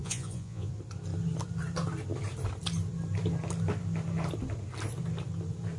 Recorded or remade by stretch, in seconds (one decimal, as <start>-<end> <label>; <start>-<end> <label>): 0.0-0.7 remade; 0.7-5.8 recorded